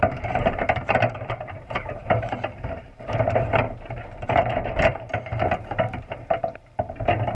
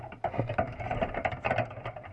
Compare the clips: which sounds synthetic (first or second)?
first